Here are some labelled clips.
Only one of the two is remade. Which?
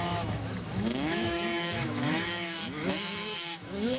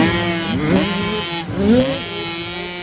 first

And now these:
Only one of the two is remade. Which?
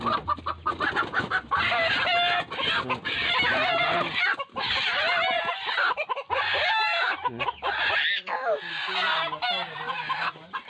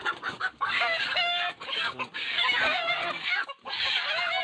second